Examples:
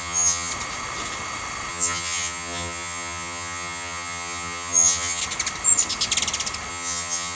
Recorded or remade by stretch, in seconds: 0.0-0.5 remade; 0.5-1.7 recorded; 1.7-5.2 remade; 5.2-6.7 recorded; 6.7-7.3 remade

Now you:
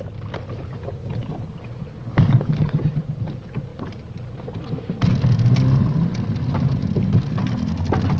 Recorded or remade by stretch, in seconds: 0.0-1.0 recorded; 1.0-1.5 remade; 1.5-2.1 recorded; 2.1-2.8 remade; 2.8-8.2 recorded

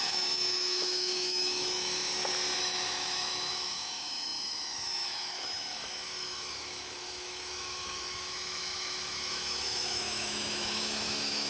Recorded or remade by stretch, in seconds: 0.0-2.1 remade; 2.1-2.6 recorded; 2.6-11.5 remade

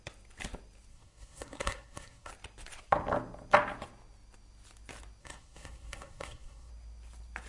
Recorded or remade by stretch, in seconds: 0.0-0.9 recorded; 0.9-2.3 remade; 2.3-5.2 recorded; 5.2-6.7 remade; 6.7-7.5 recorded

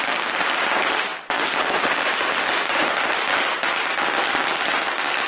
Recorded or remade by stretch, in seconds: 0.0-5.3 recorded

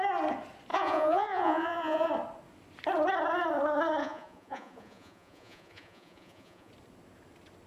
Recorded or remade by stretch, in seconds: 0.0-0.7 recorded; 0.7-2.1 remade; 2.1-4.0 recorded; 4.0-6.7 remade; 6.7-7.7 recorded

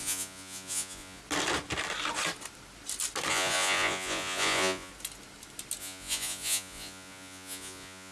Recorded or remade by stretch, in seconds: 0.0-1.2 remade; 1.2-3.3 recorded; 3.3-4.9 remade; 4.9-5.8 recorded; 5.8-8.1 remade